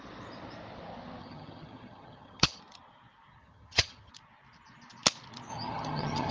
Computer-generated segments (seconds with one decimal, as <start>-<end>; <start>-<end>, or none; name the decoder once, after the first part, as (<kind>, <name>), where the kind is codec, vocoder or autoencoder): 1.2-2.6 (vocoder, HiFi-GAN); 3.4-4.1; 5.5-6.3